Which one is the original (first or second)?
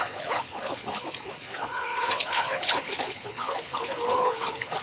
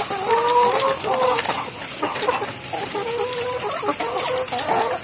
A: second